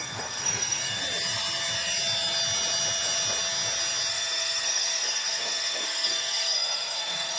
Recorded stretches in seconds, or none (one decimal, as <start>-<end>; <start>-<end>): 1.0-4.1